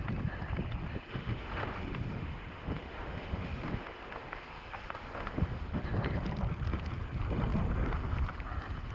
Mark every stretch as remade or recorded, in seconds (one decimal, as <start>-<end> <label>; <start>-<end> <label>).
0.0-1.1 recorded; 1.1-5.8 remade; 5.8-8.9 recorded